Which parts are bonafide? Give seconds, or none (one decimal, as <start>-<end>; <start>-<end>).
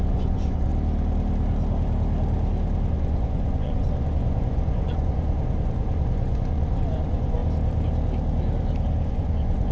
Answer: 0.7-2.9; 7.4-9.1